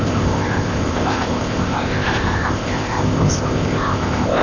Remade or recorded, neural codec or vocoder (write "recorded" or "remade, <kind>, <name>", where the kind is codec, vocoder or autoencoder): remade, codec, ZipCodec